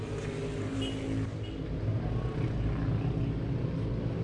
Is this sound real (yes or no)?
yes